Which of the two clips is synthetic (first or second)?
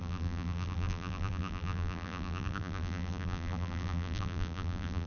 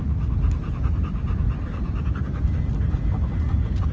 first